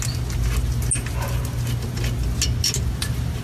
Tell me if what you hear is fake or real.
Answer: real